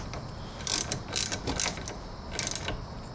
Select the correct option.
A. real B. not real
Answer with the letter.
A